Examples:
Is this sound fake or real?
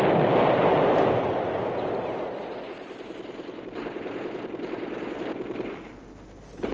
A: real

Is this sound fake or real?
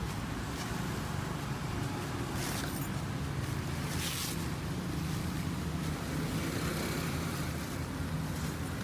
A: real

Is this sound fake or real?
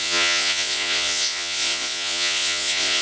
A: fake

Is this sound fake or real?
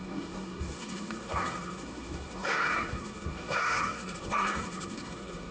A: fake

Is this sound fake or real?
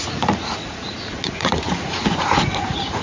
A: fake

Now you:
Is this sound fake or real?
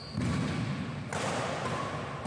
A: real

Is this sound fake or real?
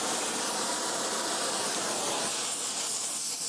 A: real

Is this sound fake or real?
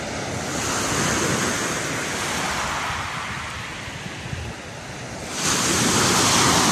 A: real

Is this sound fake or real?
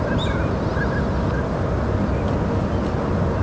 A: real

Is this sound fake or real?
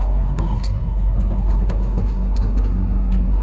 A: fake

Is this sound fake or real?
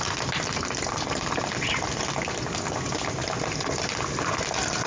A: real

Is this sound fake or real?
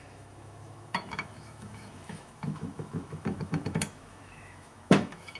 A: fake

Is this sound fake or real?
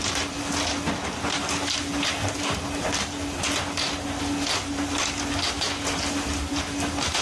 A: real